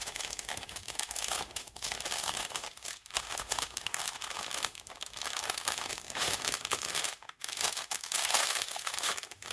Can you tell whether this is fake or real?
fake